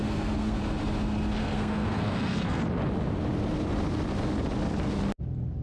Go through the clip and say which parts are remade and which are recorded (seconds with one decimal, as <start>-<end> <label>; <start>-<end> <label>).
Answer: 0.0-0.6 remade; 0.6-1.4 recorded; 1.4-2.6 remade; 2.6-5.6 recorded